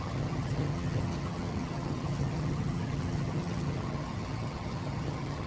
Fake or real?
fake